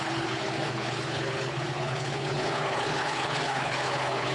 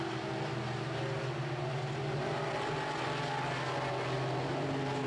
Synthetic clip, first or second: first